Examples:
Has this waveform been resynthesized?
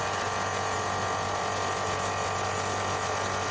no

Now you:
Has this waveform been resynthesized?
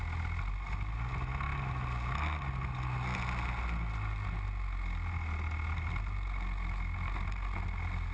no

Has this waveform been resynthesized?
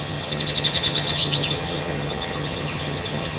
yes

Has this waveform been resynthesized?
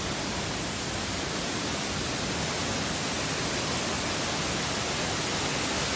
no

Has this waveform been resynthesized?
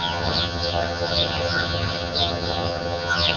yes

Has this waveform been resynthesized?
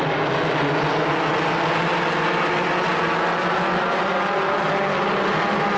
no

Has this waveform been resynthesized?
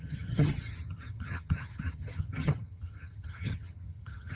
yes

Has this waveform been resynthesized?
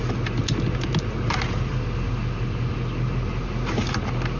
no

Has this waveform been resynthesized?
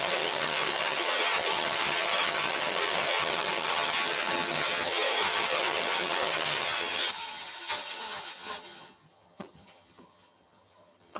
yes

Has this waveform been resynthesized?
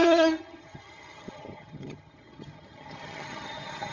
yes